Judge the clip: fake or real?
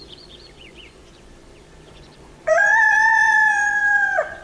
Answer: fake